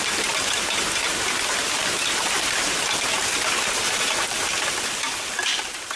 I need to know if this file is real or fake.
fake